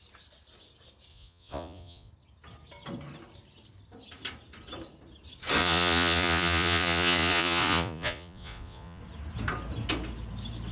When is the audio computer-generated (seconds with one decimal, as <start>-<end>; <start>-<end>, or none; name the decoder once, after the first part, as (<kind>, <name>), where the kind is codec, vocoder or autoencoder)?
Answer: 1.1-2.1 (vocoder, Vocos); 5.6-9.0